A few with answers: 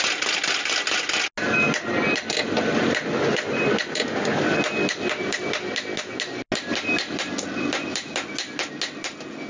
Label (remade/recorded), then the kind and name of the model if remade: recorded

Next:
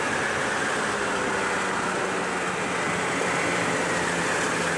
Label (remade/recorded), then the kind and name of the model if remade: recorded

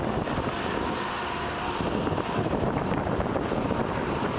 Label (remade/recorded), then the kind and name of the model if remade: recorded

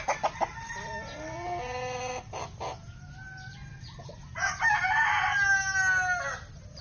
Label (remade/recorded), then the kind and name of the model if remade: recorded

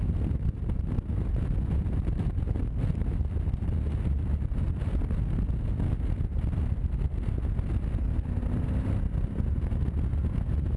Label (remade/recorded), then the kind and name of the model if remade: recorded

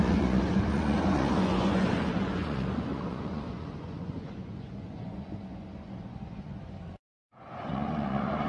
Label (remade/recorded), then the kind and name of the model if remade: remade, vocoder, Vocos